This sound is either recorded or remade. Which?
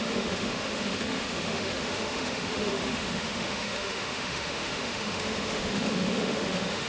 remade